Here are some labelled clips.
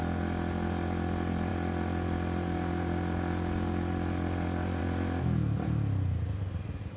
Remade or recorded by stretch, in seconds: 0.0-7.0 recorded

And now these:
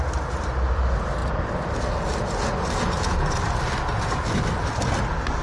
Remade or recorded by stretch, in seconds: 0.0-5.4 recorded

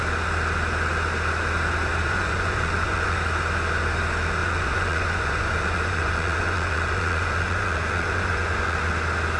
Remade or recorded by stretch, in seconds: 0.0-2.0 recorded; 2.0-3.2 remade; 3.2-4.4 recorded; 4.4-8.9 remade; 8.9-9.4 recorded

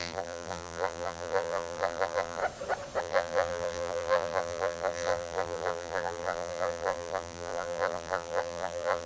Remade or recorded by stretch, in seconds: 0.0-2.4 remade; 2.4-3.0 recorded; 3.0-9.1 remade

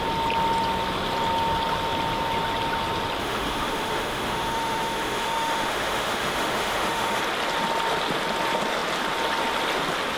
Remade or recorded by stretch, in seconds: 0.0-3.2 recorded; 3.2-7.2 remade; 7.2-10.2 recorded

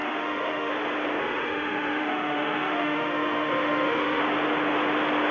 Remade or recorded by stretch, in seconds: 0.0-0.7 remade; 0.7-1.2 recorded; 1.2-4.2 remade; 4.2-5.3 recorded